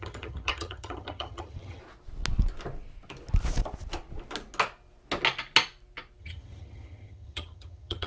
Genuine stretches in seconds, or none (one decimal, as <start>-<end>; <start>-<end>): 1.8-6.2